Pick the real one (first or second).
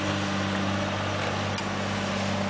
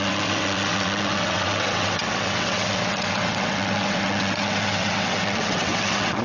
first